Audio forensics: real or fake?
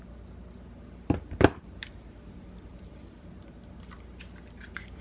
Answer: real